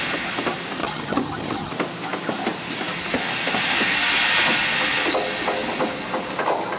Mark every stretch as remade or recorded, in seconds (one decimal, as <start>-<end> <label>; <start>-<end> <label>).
0.0-0.8 recorded; 0.8-1.7 remade; 1.7-6.8 recorded